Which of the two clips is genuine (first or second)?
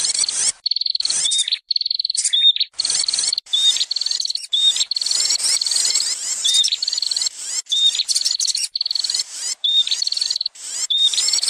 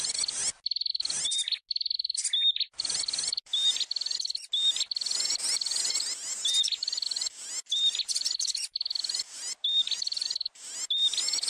second